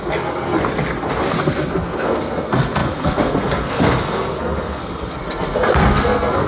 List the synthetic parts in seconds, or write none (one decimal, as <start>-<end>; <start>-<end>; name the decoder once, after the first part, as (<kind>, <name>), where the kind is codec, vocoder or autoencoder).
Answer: 0.0-0.6 (codec, SNAC); 1.4-6.5